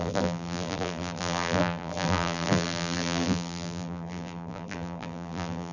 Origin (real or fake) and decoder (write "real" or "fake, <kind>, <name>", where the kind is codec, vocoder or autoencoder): fake, vocoder, BigVGAN v2